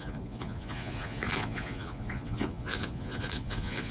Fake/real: fake